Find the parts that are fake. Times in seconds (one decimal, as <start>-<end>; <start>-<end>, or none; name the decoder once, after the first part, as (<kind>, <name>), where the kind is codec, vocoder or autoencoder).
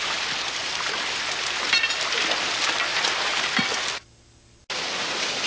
none